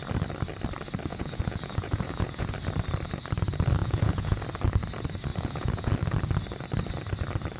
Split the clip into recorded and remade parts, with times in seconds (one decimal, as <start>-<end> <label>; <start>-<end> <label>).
0.0-1.1 recorded; 1.1-2.5 remade; 2.5-3.8 recorded; 3.8-4.4 remade; 4.4-5.3 recorded; 5.3-5.9 remade; 5.9-7.6 recorded